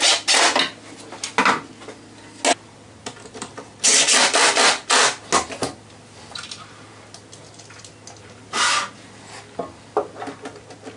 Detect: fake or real real